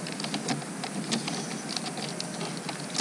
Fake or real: real